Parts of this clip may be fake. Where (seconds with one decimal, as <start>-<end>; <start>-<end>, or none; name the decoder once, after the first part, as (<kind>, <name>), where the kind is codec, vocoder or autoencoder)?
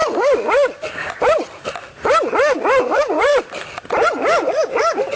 0.0-1.7 (vocoder, BigVGAN v2); 3.3-4.7